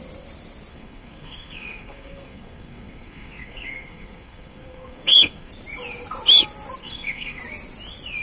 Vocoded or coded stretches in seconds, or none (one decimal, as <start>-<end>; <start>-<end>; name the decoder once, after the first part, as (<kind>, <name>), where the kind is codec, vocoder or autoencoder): 0.7-5.5 (codec, SNAC); 6.8-7.4